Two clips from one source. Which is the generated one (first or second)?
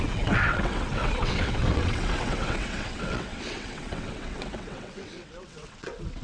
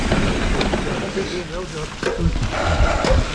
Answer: first